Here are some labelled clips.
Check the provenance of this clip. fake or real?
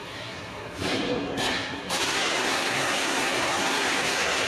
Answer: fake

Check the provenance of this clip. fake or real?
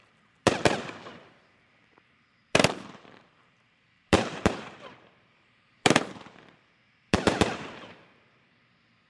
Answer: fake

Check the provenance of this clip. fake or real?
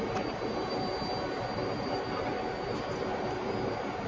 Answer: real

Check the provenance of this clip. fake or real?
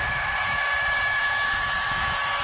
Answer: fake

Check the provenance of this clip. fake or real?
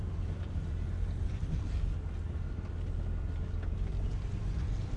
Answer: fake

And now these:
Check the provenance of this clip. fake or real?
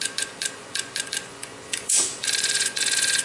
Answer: fake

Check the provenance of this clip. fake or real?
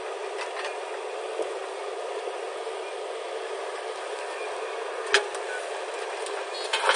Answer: real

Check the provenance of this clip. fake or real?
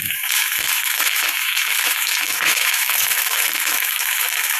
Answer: fake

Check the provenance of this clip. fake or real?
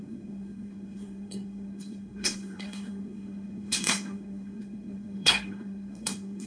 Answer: fake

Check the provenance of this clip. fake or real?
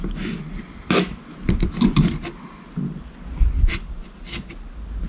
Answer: real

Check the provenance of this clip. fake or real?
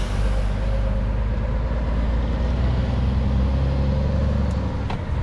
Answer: real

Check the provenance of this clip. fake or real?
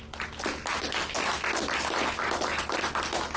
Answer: real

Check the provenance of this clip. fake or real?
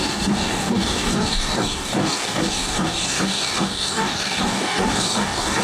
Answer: fake